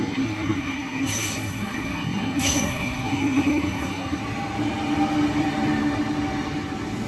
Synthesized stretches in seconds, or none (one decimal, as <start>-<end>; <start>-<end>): 0.0-4.2